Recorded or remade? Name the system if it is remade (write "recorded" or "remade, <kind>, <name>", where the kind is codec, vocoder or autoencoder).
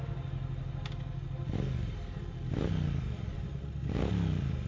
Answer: recorded